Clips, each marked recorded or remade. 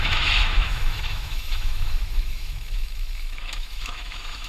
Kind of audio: remade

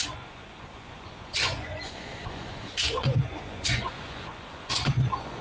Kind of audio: remade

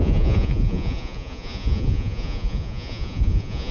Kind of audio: remade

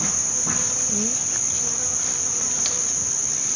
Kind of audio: recorded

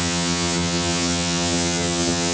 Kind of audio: remade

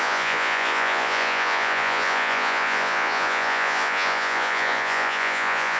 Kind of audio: remade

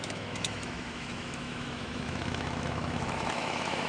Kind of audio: remade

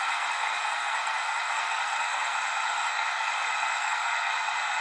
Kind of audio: remade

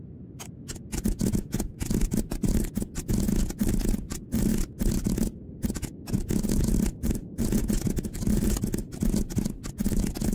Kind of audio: recorded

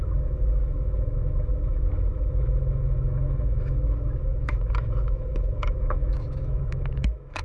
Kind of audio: remade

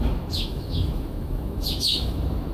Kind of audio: remade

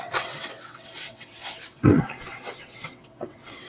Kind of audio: remade